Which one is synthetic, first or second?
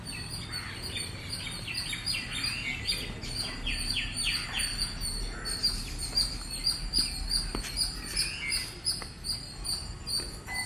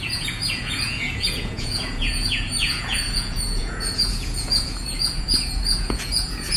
second